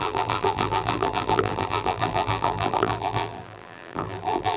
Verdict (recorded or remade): remade